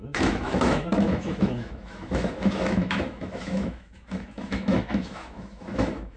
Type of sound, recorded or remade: remade